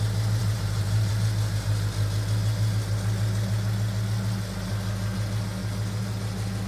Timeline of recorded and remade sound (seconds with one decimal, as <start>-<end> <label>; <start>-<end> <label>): 0.0-0.4 recorded; 0.4-1.1 remade; 1.1-6.7 recorded